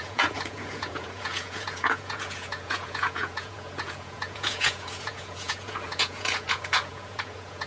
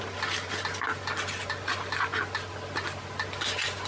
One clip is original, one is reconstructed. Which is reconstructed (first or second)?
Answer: first